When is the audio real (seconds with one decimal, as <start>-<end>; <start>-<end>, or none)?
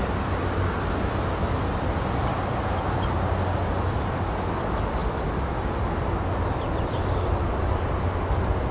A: 0.0-8.7